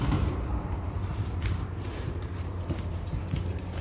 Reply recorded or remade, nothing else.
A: remade